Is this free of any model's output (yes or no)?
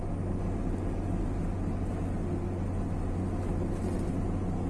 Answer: yes